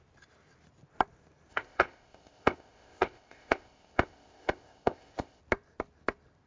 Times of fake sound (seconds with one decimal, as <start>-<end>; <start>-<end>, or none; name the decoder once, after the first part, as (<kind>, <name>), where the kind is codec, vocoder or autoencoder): 1.5-5.4 (codec, ZipCodec)